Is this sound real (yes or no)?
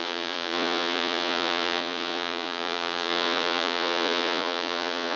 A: no